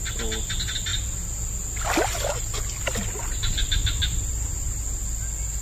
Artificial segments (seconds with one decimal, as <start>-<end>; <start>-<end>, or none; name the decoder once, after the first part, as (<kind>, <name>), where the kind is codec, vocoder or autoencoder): none